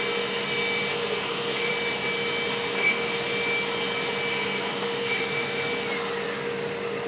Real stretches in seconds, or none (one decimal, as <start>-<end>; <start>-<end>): 0.0-0.9; 1.7-2.7; 3.2-4.3; 5.7-7.1